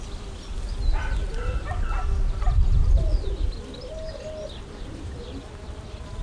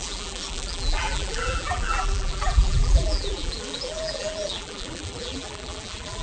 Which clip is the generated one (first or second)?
second